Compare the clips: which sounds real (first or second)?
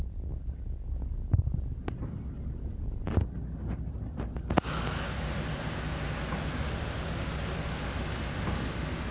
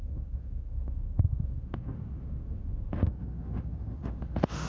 first